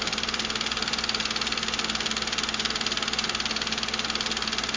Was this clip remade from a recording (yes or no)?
no